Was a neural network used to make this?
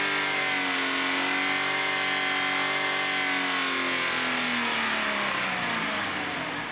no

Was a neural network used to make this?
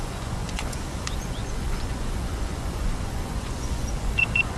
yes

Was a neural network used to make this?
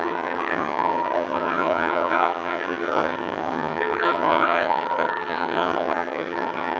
yes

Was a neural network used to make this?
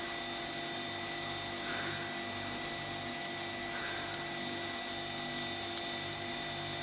no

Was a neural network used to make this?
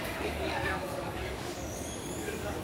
yes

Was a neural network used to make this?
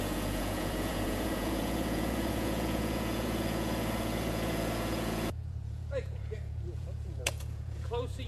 yes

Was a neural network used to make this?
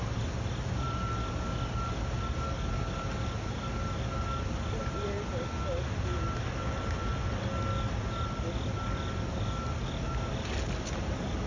no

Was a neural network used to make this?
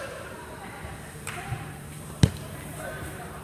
yes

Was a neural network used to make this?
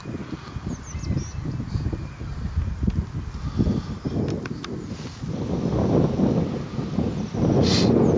no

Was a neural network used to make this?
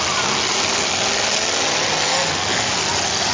no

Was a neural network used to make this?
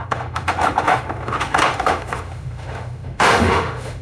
yes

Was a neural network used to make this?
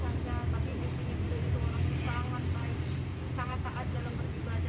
yes